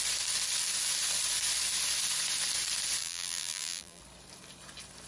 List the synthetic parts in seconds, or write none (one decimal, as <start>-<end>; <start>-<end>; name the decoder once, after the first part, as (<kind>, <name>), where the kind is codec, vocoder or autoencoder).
3.0-4.0 (vocoder, BigVGAN v2)